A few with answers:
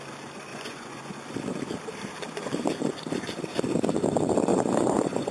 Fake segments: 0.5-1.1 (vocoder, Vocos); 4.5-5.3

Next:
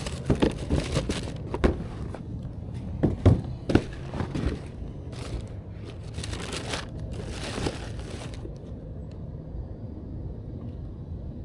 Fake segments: none

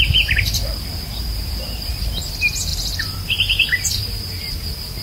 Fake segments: 0.9-2.1 (vocoder, BigVGAN v2); 2.7-4.1

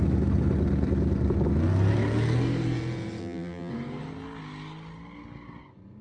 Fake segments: 3.2-3.7 (vocoder, BigVGAN v2)

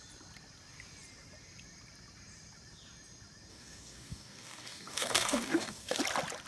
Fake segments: 3.5-6.0 (codec, DAC)

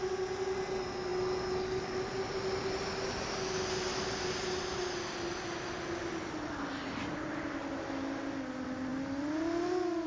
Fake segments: none

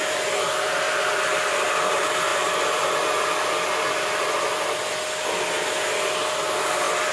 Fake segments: none